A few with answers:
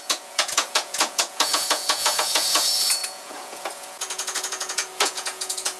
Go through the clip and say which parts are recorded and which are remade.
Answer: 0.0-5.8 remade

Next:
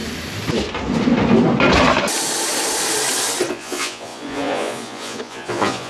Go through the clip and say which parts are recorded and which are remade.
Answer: 0.0-3.5 recorded; 3.5-5.9 remade

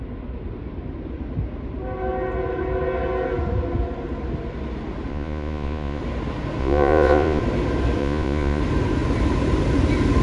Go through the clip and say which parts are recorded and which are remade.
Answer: 0.0-5.1 recorded; 5.1-6.0 remade; 6.0-6.6 recorded; 6.6-7.4 remade; 7.4-8.0 recorded; 8.0-8.6 remade; 8.6-10.2 recorded

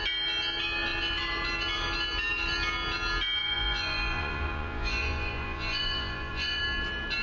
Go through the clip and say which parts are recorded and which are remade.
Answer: 0.0-3.4 recorded; 3.4-6.6 remade; 6.6-7.2 recorded

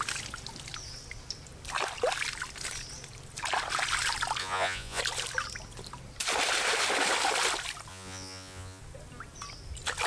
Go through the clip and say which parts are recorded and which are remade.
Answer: 0.0-4.4 recorded; 4.4-5.0 remade; 5.0-7.9 recorded; 7.9-8.8 remade; 8.8-10.1 recorded